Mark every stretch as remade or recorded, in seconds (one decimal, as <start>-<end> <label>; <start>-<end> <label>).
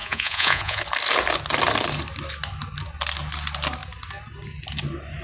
0.0-0.8 remade; 0.8-5.2 recorded